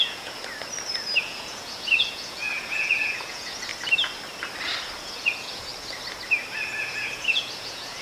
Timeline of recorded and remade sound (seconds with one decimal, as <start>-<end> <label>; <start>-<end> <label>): 0.0-0.4 remade; 0.4-1.2 recorded; 1.2-3.7 remade; 3.7-5.0 recorded; 5.0-5.7 remade; 5.7-6.8 recorded; 6.8-8.0 remade